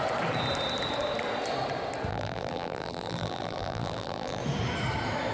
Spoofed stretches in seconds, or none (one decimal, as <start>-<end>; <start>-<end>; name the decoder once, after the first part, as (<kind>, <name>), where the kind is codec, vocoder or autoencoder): 2.1-4.4 (vocoder, BigVGAN v2)